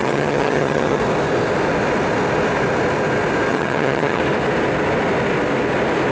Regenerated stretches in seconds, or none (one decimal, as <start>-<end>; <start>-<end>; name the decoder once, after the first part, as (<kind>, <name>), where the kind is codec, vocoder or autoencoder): 0.0-1.0 (vocoder, HiFi-GAN); 3.5-4.2